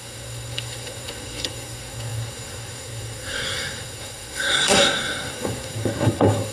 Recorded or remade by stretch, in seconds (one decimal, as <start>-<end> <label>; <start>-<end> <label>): 0.0-6.5 remade